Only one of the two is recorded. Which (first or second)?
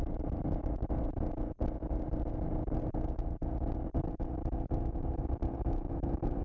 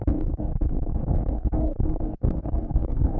first